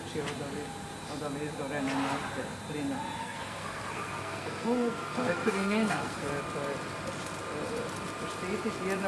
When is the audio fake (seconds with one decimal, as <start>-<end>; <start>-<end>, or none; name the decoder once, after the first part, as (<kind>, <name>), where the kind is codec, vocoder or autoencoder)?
3.2-6.3 (codec, SNAC)